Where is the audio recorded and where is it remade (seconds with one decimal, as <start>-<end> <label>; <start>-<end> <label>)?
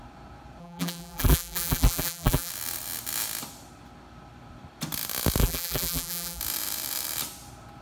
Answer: 0.0-0.6 recorded; 0.6-2.5 remade; 2.5-5.4 recorded; 5.4-6.4 remade; 6.4-7.8 recorded